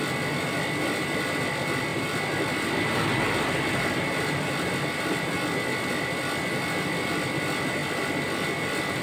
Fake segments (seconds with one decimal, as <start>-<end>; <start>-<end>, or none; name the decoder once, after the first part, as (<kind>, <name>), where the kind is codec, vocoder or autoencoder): none